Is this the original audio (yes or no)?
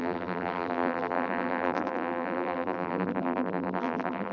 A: no